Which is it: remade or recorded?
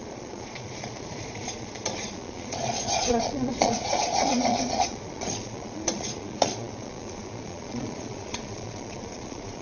remade